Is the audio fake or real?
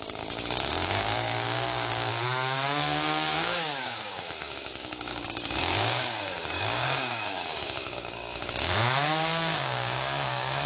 fake